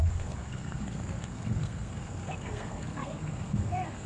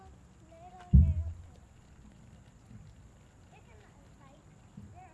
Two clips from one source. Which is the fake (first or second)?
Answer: first